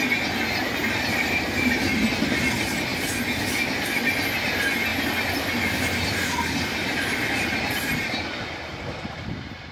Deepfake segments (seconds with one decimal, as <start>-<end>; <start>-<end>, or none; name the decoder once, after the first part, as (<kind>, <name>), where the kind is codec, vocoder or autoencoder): 0.8-2.0 (vocoder, BigVGAN v2); 4.9-9.7